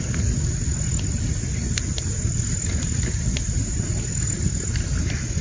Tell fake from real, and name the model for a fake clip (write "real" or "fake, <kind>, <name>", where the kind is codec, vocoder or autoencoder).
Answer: real